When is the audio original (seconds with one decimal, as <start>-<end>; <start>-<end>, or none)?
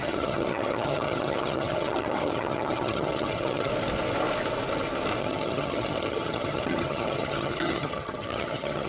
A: 3.7-5.2